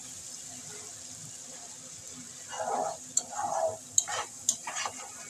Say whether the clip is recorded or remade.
recorded